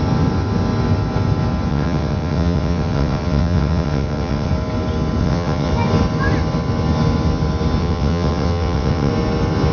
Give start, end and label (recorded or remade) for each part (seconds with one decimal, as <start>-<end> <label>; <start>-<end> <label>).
0.0-1.7 recorded; 1.7-4.5 remade; 4.5-5.2 recorded; 5.2-5.7 remade; 5.7-7.8 recorded; 7.8-9.1 remade; 9.1-9.7 recorded